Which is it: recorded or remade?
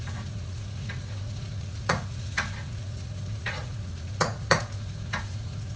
remade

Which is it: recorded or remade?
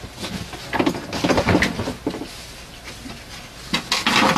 recorded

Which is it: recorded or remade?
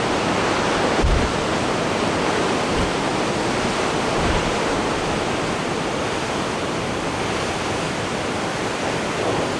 recorded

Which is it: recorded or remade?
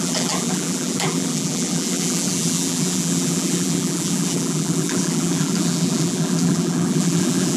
remade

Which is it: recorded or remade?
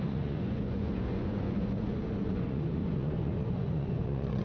remade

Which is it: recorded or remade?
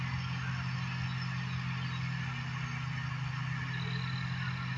recorded